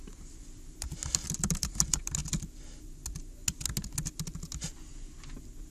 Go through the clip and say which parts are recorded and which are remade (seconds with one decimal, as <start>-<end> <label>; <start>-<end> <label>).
0.0-2.2 remade; 2.2-5.7 recorded